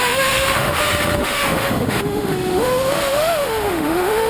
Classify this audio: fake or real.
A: fake